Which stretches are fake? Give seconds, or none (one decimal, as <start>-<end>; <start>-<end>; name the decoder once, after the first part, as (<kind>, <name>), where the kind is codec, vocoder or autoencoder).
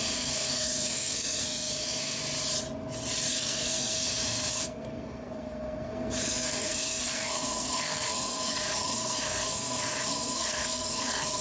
0.0-2.2 (codec, SNAC); 3.3-11.4